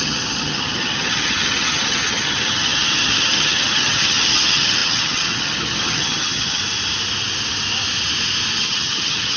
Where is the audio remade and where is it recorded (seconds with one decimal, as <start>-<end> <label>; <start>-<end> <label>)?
0.0-6.6 remade; 6.6-8.6 recorded; 8.6-9.4 remade